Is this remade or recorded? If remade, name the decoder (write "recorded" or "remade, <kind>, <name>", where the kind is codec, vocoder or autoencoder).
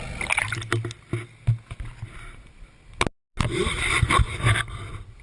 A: recorded